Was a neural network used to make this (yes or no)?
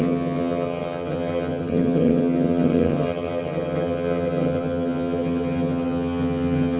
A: yes